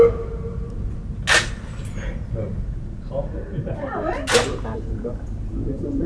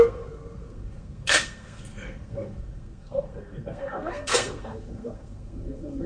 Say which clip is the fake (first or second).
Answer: second